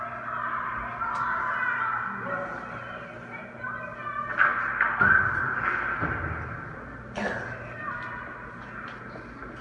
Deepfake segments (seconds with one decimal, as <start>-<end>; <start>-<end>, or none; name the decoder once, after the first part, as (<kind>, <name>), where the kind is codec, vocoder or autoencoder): none